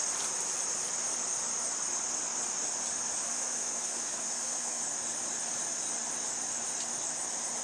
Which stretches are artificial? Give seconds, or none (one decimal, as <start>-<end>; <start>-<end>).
3.3-4.8

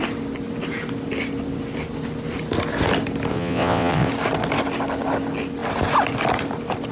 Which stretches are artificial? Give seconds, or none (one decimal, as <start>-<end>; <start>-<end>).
3.3-4.1

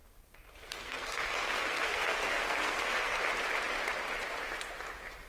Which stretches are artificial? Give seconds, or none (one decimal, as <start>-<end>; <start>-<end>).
0.0-3.2

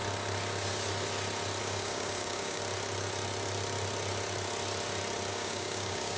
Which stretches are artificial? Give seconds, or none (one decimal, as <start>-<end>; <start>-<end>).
1.6-2.6; 5.3-6.2

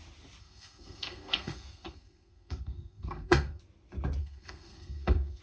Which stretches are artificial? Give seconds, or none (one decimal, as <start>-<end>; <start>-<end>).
0.4-3.6; 4.2-5.4

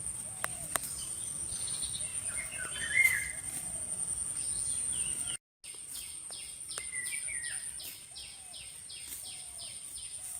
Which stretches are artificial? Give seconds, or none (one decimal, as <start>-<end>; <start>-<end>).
none